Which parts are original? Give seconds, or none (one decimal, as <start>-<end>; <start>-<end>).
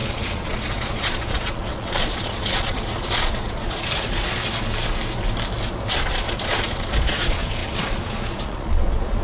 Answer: 4.4-5.9